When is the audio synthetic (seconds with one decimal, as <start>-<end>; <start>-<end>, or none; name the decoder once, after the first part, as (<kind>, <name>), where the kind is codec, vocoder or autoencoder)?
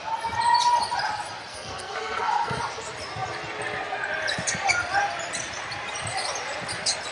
1.5-2.6 (codec, SNAC)